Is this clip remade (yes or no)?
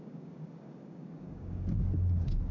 yes